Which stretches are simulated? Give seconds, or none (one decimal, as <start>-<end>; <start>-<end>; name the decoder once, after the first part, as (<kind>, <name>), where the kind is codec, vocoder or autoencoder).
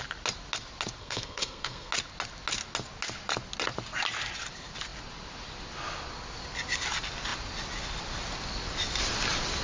1.0-1.9 (codec, SNAC)